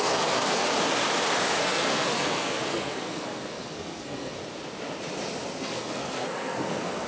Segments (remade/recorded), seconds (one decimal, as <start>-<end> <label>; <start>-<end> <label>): 0.0-0.6 remade; 0.6-1.6 recorded; 1.6-4.4 remade; 4.4-5.6 recorded; 5.6-7.1 remade